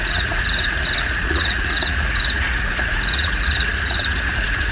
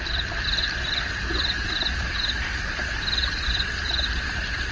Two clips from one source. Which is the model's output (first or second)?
first